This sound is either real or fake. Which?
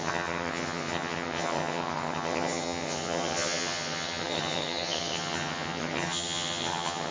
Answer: fake